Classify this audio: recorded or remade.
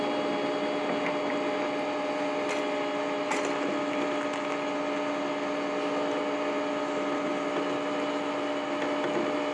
recorded